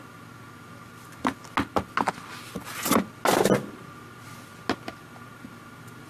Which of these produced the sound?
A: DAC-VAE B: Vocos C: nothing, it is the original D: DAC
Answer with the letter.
C